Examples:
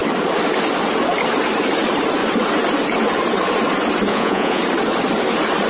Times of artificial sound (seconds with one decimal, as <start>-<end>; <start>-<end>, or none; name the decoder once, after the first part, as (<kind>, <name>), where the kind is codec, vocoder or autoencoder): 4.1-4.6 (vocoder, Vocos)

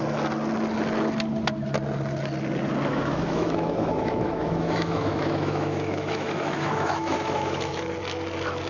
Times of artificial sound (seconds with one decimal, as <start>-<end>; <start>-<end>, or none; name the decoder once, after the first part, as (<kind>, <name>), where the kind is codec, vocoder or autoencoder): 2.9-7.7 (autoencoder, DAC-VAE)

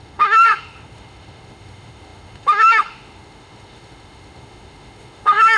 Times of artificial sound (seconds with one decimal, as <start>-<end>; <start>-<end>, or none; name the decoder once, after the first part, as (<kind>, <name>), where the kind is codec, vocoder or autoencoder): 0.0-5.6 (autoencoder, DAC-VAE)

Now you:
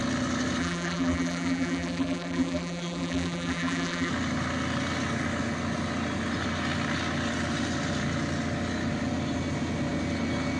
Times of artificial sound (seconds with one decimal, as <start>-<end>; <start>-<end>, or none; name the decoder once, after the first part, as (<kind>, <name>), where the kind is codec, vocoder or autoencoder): 0.6-4.1 (vocoder, BigVGAN v2)

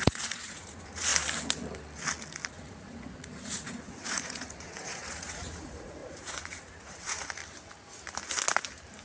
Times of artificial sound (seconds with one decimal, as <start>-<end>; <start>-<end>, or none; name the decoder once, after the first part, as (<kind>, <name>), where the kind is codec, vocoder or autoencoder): 0.0-1.1 (vocoder, Vocos); 2.5-7.4